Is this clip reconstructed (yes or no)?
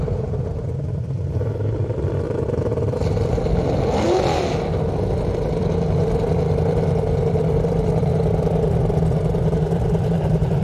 yes